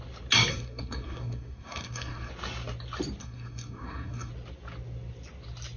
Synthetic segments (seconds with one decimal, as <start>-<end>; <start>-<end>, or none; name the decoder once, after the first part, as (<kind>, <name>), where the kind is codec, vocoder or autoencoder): 0.5-2.3 (codec, SNAC); 3.2-4.3